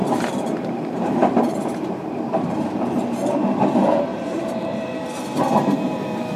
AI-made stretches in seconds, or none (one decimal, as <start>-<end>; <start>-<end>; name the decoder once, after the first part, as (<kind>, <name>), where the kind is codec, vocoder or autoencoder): 0.0-3.3 (vocoder, BigVGAN v2); 4.1-5.0